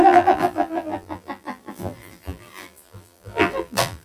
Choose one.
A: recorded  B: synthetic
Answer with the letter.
B